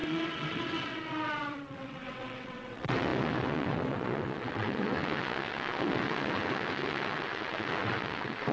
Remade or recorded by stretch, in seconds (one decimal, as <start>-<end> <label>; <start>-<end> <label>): 0.0-8.5 remade